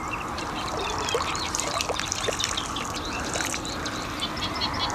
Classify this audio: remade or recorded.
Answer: recorded